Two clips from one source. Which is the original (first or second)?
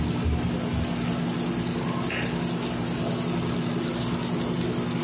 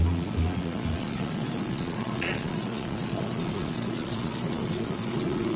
first